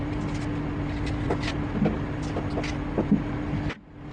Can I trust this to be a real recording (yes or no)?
yes